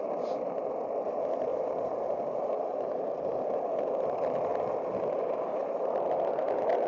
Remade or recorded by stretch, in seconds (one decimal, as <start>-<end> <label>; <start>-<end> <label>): 0.0-1.5 recorded; 1.5-3.1 remade; 3.1-6.9 recorded